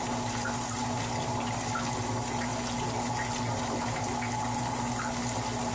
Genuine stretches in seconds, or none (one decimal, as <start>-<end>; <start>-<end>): 0.0-5.7